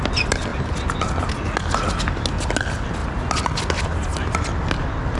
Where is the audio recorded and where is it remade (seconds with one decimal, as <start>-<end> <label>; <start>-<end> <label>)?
0.0-5.2 recorded